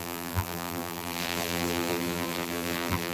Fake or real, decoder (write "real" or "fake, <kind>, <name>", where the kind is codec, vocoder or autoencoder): fake, vocoder, BigVGAN v2